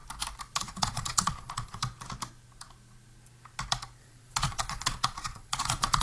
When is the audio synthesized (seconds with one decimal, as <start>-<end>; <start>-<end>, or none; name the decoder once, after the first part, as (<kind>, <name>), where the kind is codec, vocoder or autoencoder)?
0.6-1.8 (vocoder, Vocos); 4.0-6.0